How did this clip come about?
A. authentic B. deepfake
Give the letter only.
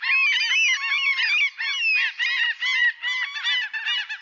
A